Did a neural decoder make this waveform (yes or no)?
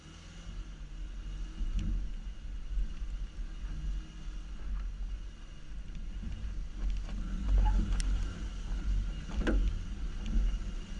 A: no